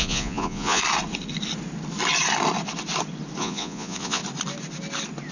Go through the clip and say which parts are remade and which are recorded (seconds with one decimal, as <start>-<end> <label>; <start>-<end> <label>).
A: 0.0-0.8 remade; 0.8-3.4 recorded; 3.4-4.2 remade; 4.2-5.3 recorded